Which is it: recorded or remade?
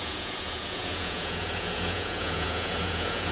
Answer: remade